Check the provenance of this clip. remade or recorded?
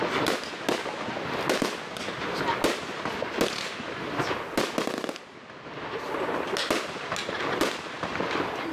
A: recorded